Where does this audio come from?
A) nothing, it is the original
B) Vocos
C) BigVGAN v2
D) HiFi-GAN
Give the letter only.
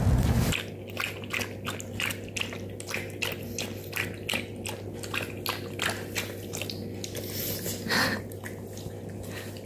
A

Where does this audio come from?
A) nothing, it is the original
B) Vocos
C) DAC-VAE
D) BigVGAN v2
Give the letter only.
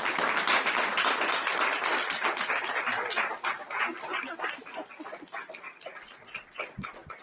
A